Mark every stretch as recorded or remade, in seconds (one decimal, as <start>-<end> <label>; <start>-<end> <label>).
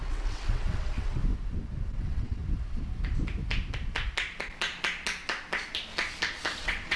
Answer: 0.0-1.2 remade; 1.2-1.9 recorded; 1.9-2.4 remade; 2.4-6.6 recorded; 6.6-7.0 remade